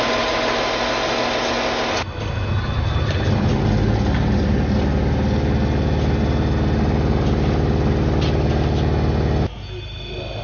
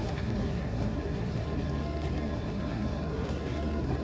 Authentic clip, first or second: first